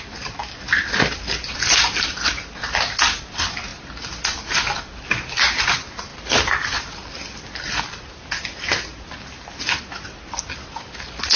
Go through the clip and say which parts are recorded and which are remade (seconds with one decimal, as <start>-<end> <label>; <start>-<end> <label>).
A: 0.0-11.4 recorded